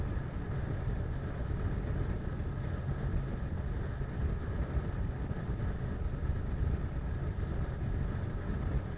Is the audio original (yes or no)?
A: yes